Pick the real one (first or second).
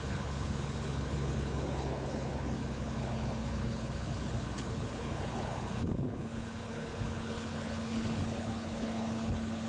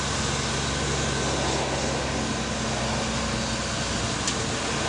second